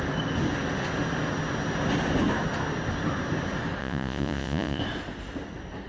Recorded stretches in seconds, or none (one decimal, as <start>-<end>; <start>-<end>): 0.0-3.8; 4.8-5.9